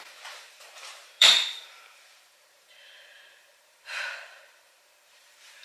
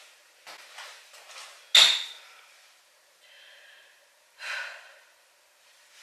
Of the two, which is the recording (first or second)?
second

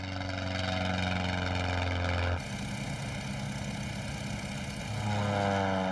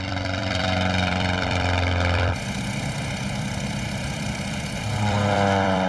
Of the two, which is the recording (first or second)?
first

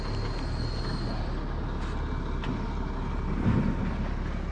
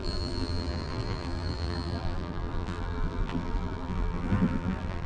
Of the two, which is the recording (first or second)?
first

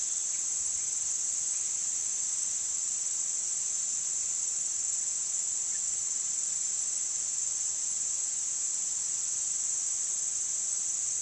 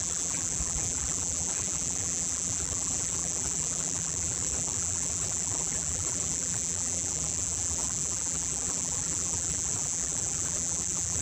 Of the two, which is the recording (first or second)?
first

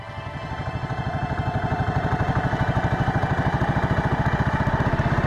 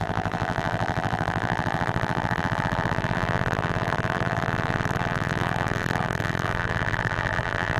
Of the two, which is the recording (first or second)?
first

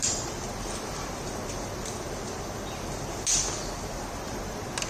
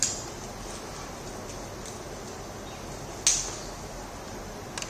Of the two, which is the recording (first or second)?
second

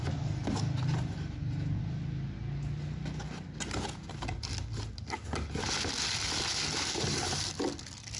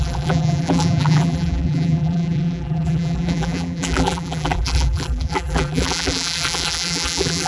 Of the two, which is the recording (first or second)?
first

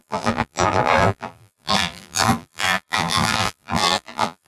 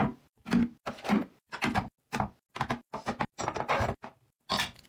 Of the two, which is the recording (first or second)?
second